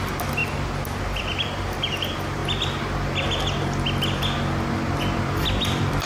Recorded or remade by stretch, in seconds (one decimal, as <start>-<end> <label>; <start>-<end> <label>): 0.0-0.4 remade; 0.4-1.0 recorded; 1.0-2.4 remade; 2.4-5.2 recorded; 5.2-6.1 remade

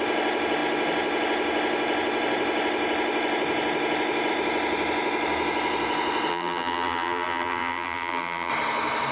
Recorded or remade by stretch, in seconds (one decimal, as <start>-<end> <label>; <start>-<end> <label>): 0.0-6.3 recorded; 6.3-8.5 remade; 8.5-9.1 recorded

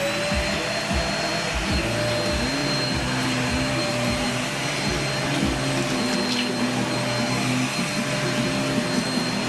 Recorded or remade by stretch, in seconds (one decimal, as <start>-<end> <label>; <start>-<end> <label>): 0.0-2.6 recorded; 2.6-4.9 remade; 4.9-9.5 recorded

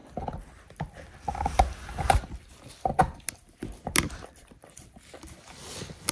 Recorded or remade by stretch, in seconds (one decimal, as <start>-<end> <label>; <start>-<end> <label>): 0.0-3.0 recorded; 3.0-6.1 remade

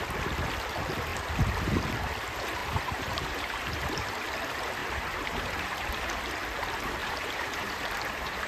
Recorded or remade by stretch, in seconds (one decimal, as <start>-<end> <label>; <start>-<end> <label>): 0.0-2.6 recorded; 2.6-4.1 remade; 4.1-4.8 recorded; 4.8-6.2 remade; 6.2-7.0 recorded; 7.0-8.5 remade

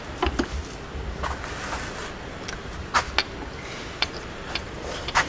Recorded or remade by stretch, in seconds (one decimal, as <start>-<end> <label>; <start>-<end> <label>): 0.0-0.6 remade; 0.6-3.6 recorded; 3.6-5.3 remade

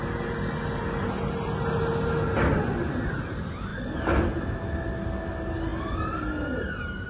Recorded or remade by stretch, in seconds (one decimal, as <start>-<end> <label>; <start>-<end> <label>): 0.0-7.1 recorded